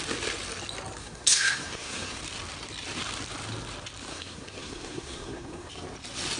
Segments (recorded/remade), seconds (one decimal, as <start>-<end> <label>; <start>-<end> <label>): 0.0-1.0 recorded; 1.0-2.2 remade; 2.2-4.1 recorded; 4.1-5.7 remade; 5.7-6.4 recorded